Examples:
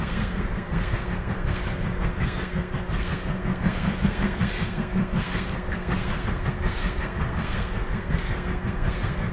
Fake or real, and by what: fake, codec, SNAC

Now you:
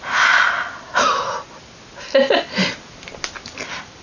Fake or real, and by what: real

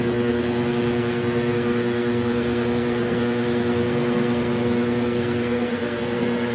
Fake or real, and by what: fake, codec, SNAC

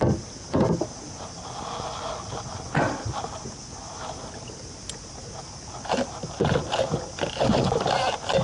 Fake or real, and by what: real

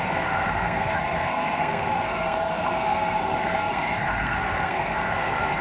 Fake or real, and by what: fake, codec, SNAC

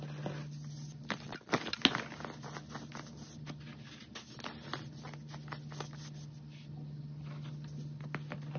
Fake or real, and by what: real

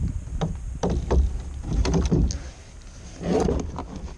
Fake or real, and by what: real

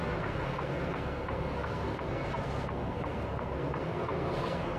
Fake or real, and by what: fake, codec, SNAC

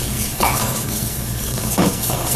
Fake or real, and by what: fake, codec, SNAC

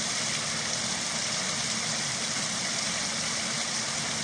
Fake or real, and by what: real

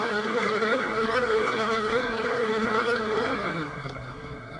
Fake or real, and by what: fake, codec, SNAC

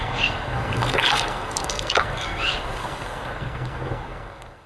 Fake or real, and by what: fake, codec, SNAC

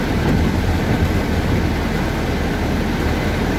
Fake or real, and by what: real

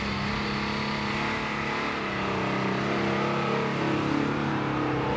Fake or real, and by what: real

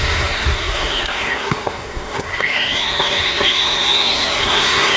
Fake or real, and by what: fake, codec, SNAC